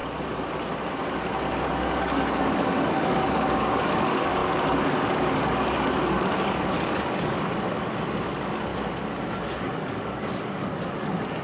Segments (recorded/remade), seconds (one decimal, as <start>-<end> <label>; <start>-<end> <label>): 0.0-1.1 recorded; 1.1-8.7 remade; 8.7-9.4 recorded; 9.4-11.4 remade